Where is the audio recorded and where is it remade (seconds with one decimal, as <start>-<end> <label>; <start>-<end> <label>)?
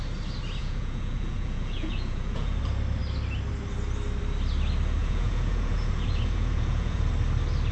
0.0-0.6 recorded; 0.6-2.6 remade; 2.6-5.0 recorded; 5.0-7.1 remade; 7.1-7.7 recorded